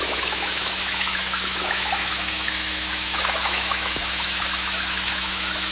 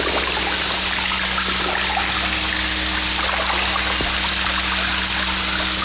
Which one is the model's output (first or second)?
first